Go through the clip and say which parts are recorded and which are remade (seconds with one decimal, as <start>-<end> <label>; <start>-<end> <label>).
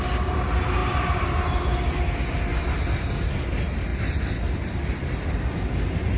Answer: 0.0-6.2 recorded